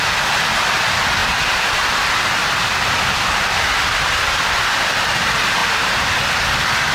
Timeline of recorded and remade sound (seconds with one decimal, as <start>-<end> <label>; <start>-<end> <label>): 0.0-5.6 recorded; 5.6-6.2 remade; 6.2-6.9 recorded